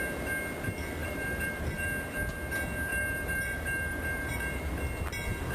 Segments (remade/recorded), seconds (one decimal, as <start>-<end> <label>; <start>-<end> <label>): 0.0-1.0 recorded; 1.0-1.9 remade; 1.9-2.9 recorded; 2.9-4.8 remade; 4.8-5.5 recorded